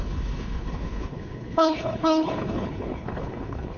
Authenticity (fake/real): fake